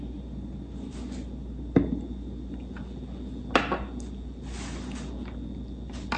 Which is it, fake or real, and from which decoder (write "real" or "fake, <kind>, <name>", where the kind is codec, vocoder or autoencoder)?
real